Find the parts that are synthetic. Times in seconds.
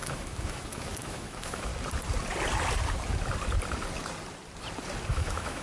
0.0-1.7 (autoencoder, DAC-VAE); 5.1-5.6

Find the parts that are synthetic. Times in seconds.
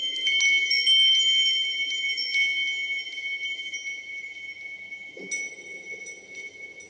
none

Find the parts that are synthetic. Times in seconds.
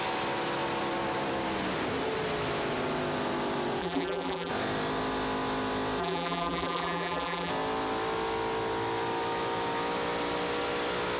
3.8-4.5 (vocoder, BigVGAN v2); 6.0-7.5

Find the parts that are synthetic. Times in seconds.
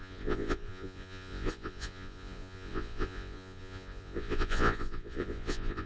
0.0-5.9 (vocoder, Vocos)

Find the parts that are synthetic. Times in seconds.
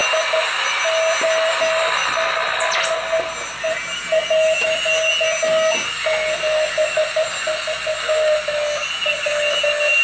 none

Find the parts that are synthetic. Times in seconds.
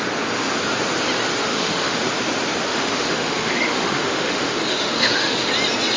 1.4-2.0 (autoencoder, DAC-VAE); 2.7-5.5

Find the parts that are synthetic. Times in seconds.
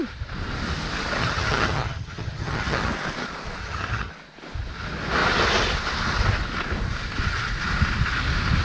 1.2-2.9 (vocoder, HiFi-GAN); 3.6-4.1